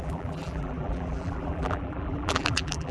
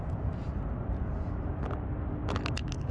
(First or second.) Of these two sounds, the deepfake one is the first